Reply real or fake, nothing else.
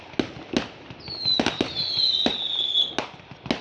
real